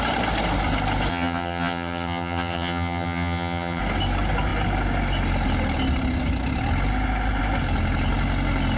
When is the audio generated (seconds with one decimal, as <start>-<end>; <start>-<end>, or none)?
1.1-3.8

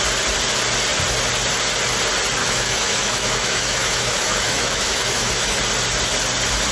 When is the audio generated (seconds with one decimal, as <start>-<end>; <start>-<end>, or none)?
2.4-5.6